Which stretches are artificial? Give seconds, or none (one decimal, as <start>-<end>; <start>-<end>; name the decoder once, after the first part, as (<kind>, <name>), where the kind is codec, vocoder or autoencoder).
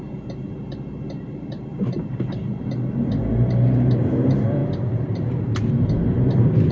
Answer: 0.0-6.7 (vocoder, BigVGAN v2)